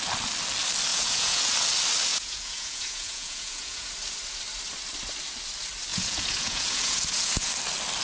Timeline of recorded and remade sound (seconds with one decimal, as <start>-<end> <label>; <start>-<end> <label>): 0.0-0.9 recorded; 0.9-1.5 remade; 1.5-2.1 recorded; 2.1-3.9 remade; 3.9-5.9 recorded; 5.9-7.5 remade; 7.5-8.0 recorded